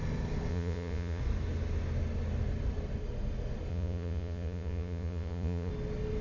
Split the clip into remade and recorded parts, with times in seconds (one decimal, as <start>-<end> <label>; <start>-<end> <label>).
0.0-0.5 recorded; 0.5-1.2 remade; 1.2-3.7 recorded; 3.7-5.7 remade; 5.7-6.2 recorded